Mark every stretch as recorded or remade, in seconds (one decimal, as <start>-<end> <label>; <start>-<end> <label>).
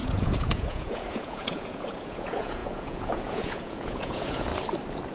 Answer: 0.0-4.5 remade; 4.5-5.1 recorded